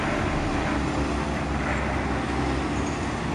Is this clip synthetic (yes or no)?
no